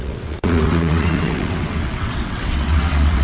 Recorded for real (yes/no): no